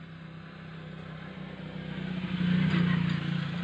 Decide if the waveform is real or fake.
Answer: real